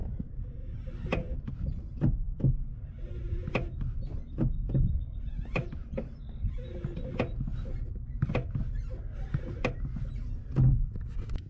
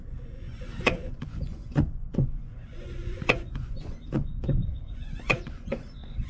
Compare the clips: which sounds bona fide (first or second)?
first